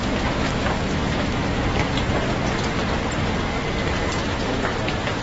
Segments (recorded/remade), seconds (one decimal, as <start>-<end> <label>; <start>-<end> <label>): 0.0-1.6 remade; 1.6-5.2 recorded